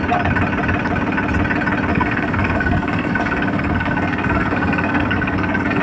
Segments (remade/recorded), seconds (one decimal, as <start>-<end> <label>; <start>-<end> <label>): 0.0-1.9 recorded; 1.9-5.8 remade